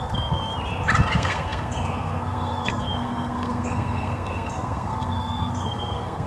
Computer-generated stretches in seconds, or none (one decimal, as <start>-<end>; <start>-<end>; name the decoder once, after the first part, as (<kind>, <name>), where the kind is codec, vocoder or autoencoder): 0.0-0.5 (codec, SNAC); 1.1-6.3